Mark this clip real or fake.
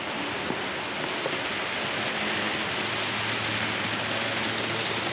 real